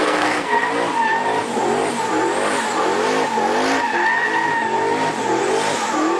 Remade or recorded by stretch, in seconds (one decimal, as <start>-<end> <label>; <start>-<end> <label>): 0.0-0.7 remade; 0.7-6.2 recorded